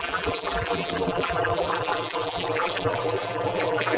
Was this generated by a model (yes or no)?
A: yes